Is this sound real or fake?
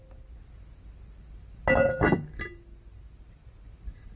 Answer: real